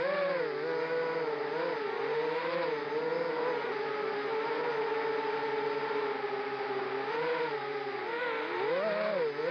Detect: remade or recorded recorded